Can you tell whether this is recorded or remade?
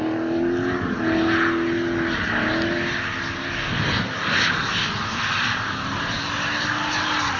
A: recorded